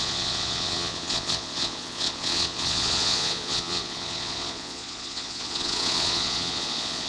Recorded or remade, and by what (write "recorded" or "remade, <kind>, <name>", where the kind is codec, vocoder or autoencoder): remade, vocoder, Vocos